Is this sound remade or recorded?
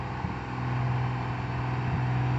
recorded